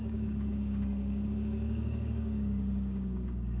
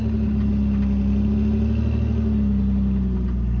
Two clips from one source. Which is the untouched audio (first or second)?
second